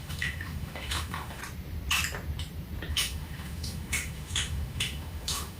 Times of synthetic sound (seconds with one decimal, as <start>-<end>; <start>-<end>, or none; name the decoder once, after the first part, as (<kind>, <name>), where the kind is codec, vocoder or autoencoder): 0.0-1.4 (autoencoder, DAC-VAE); 2.9-5.6

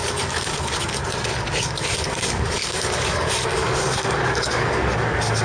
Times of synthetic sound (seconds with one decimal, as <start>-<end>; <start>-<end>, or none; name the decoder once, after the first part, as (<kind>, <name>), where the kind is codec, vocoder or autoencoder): 0.0-1.0 (codec, DAC); 1.6-5.4

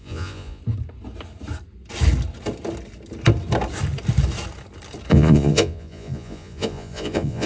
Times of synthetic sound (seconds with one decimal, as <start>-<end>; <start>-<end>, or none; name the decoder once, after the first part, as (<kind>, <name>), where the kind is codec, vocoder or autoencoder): 0.0-0.6 (vocoder, Vocos); 5.1-7.5

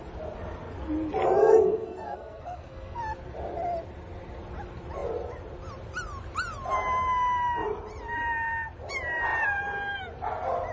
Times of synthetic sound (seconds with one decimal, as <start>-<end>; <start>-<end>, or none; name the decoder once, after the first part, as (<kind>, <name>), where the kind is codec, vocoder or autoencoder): 1.4-3.0 (codec, SNAC)

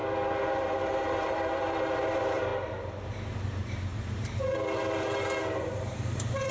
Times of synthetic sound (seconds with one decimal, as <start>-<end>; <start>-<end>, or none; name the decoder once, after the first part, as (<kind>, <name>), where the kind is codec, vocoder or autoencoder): 0.5-2.5 (vocoder, BigVGAN v2); 3.0-6.5